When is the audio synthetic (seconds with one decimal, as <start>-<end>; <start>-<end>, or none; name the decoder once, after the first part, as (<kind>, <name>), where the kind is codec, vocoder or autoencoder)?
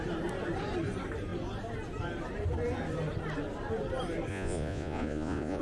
4.3-5.6 (vocoder, Vocos)